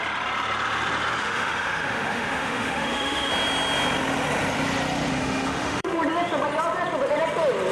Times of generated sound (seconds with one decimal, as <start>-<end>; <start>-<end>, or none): 1.2-3.3; 5.1-6.0